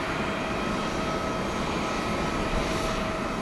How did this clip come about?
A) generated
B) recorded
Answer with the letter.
B